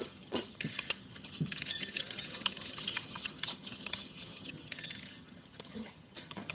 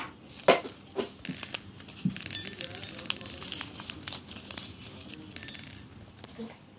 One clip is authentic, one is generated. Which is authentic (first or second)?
second